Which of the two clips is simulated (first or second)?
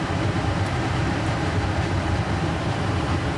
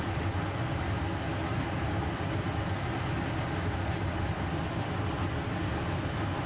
first